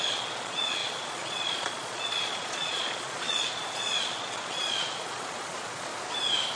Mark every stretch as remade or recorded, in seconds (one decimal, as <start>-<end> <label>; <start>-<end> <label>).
0.0-5.9 remade; 5.9-6.6 recorded